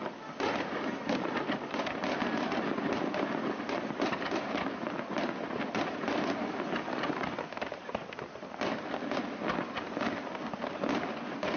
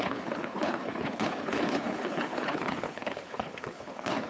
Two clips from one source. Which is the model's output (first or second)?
second